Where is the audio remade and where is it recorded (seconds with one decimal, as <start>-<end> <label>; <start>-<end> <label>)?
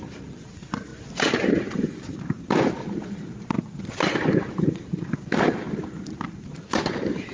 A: 0.0-0.9 remade; 0.9-1.7 recorded; 1.7-7.3 remade